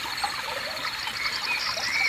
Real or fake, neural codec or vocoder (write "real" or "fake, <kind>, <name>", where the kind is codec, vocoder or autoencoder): real